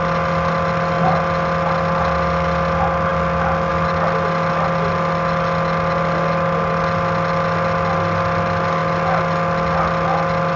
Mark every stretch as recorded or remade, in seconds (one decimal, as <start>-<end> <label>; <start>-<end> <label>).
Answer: 0.0-10.6 recorded